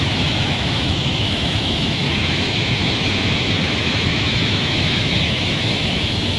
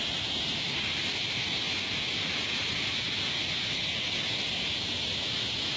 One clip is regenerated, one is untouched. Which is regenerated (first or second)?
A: first